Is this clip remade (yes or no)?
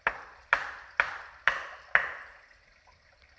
no